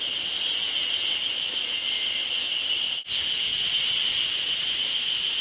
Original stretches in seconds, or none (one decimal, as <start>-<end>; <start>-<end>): 0.0-1.8; 2.4-3.5